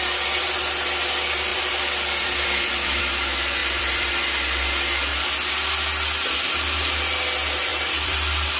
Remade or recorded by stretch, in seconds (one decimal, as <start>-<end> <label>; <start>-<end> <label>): 0.0-1.5 recorded; 1.5-3.0 remade; 3.0-3.6 recorded; 3.6-4.1 remade; 4.1-7.7 recorded; 7.7-8.6 remade